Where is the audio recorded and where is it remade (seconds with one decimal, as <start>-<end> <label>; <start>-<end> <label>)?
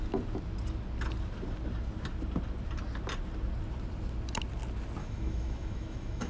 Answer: 0.0-5.0 recorded; 5.0-6.3 remade